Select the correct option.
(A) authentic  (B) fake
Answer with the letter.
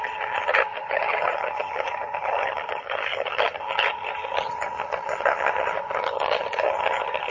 B